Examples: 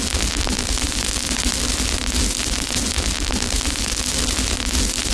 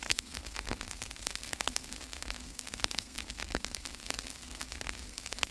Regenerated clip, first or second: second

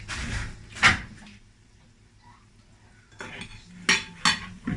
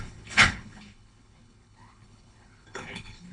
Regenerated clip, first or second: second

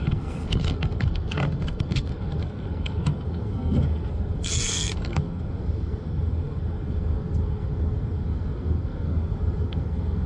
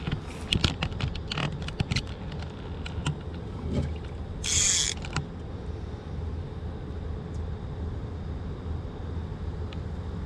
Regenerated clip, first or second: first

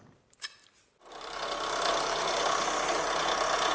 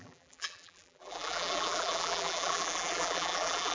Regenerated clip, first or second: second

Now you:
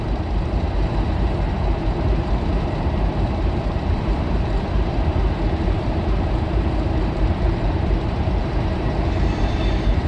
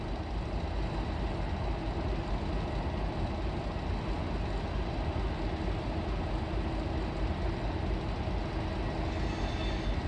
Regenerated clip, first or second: first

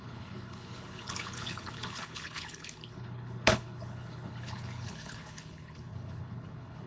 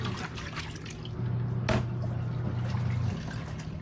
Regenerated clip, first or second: first